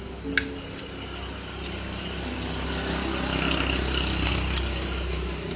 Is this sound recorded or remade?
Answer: recorded